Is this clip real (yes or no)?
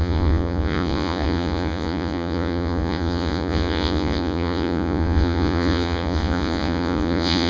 no